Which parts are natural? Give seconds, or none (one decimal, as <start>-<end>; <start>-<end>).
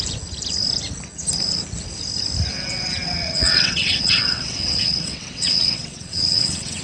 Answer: 0.0-2.5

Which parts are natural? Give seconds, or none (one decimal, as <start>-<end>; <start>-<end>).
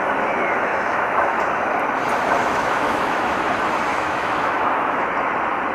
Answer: 0.0-0.7; 1.4-2.4; 3.4-3.9; 5.1-5.7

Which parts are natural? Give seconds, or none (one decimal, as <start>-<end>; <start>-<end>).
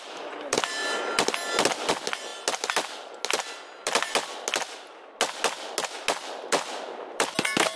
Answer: 0.0-7.8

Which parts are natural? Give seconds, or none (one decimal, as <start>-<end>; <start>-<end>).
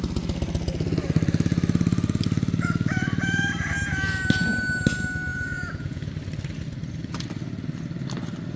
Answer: 0.0-5.3; 6.1-8.6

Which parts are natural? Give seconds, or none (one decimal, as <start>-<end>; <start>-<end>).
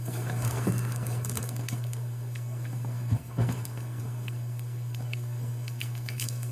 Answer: none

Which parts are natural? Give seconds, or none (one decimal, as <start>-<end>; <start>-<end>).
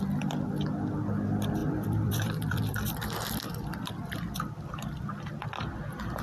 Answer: 0.0-1.6; 5.3-6.2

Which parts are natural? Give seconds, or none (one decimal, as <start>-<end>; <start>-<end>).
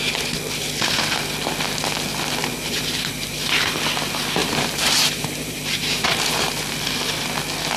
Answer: 0.0-2.4; 3.7-4.4; 6.5-7.8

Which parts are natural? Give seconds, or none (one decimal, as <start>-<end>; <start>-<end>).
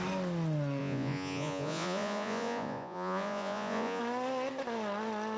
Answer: 0.0-0.8; 4.0-5.4